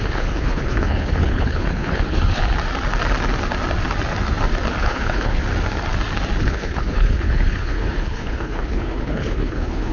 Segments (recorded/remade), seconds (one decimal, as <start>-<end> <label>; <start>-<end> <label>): 0.0-2.4 remade; 2.4-4.8 recorded; 4.8-5.4 remade; 5.4-6.4 recorded; 6.4-9.9 remade